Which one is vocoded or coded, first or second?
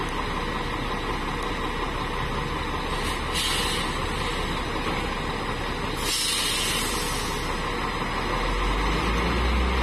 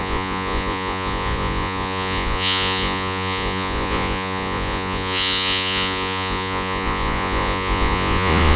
second